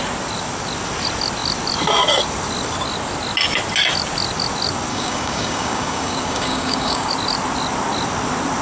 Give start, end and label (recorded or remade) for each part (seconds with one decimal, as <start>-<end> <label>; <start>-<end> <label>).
0.0-4.9 recorded; 4.9-7.1 remade; 7.1-8.6 recorded